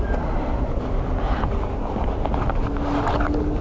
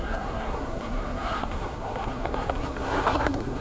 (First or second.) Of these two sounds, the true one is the first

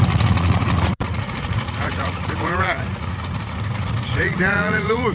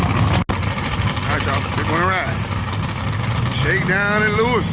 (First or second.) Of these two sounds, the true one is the second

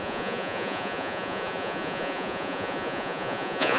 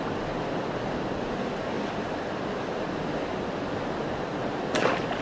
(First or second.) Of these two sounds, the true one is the second